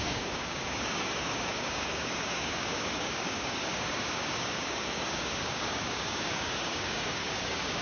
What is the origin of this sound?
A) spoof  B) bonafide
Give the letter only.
A